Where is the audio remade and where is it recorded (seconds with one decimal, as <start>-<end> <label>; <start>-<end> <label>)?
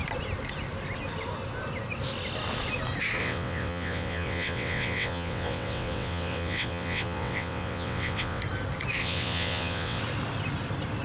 0.0-3.2 recorded; 3.2-8.4 remade; 8.4-9.0 recorded; 9.0-10.0 remade; 10.0-11.0 recorded